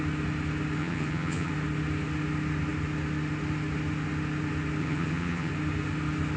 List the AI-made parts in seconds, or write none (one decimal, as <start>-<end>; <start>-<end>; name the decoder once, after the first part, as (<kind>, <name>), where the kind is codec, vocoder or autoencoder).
0.8-1.5 (vocoder, HiFi-GAN); 4.8-5.5